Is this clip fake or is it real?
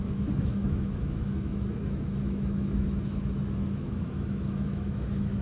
fake